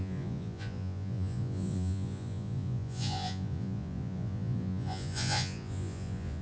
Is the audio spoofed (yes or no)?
yes